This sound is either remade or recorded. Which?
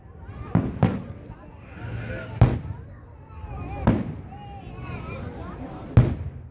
recorded